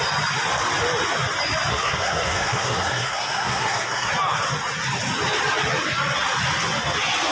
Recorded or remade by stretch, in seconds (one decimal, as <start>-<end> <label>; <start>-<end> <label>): 0.0-1.7 recorded; 1.7-4.1 remade; 4.1-7.3 recorded